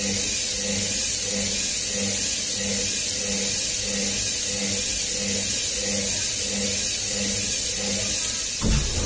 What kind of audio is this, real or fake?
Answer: real